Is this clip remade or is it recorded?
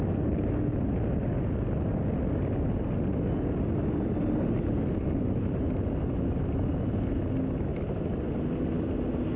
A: recorded